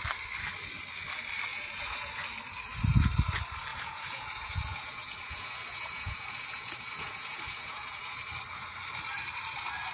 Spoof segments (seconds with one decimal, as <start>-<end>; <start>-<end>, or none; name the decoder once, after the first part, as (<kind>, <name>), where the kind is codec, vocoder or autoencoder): 1.5-2.1 (vocoder, Vocos); 3.7-8.2